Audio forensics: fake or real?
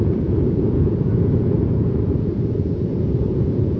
fake